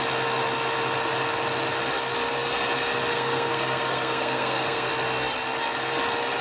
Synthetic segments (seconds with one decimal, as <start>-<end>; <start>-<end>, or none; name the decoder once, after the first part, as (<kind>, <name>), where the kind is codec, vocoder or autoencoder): 3.1-4.9 (codec, SNAC)

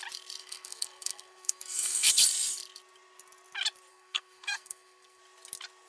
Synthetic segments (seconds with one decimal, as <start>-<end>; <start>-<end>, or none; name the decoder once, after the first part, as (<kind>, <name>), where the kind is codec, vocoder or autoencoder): 0.4-2.1 (codec, SNAC); 3.9-5.2

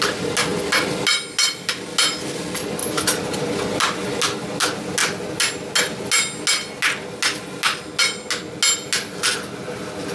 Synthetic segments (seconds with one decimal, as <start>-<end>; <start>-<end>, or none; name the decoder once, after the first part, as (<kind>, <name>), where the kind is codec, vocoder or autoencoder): none